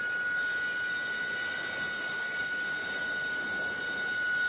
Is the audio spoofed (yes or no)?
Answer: no